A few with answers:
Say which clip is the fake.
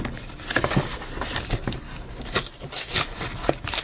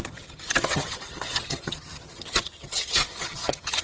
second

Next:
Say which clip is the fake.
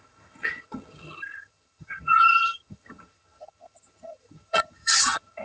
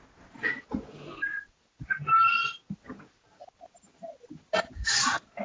first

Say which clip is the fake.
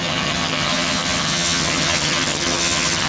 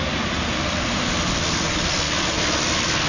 first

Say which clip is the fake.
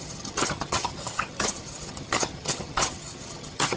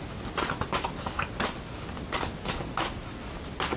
first